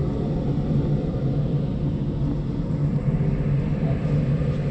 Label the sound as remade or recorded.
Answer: recorded